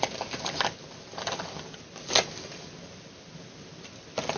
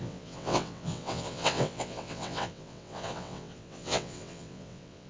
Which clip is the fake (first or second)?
second